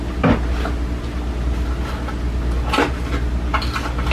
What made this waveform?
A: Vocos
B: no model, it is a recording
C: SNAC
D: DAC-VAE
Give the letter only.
B